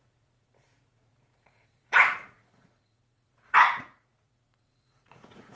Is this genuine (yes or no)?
no